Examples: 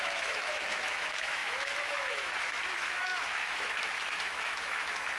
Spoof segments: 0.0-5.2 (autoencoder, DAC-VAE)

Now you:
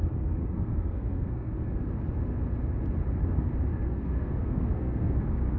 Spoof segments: 0.4-1.5 (codec, SNAC); 3.7-5.6

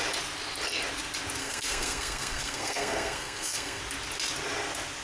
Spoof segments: 1.4-3.8 (codec, SNAC)

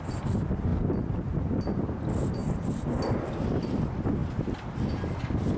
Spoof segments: 0.0-2.4 (vocoder, BigVGAN v2); 3.4-4.2

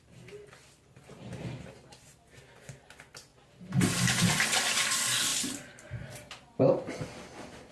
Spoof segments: none

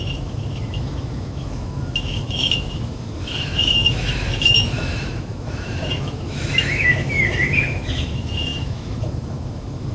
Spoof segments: 0.0-9.9 (autoencoder, DAC-VAE)

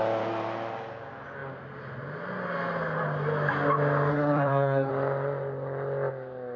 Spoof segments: 4.1-4.9 (codec, SNAC)

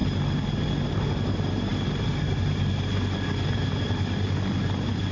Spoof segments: none